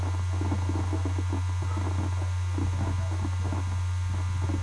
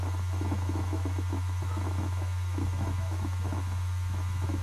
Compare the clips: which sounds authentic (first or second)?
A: first